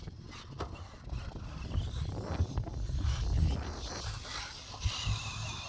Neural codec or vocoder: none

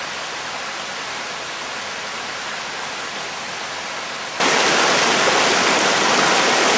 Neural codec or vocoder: none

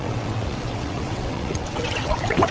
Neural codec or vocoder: vocoder, WaveNeXt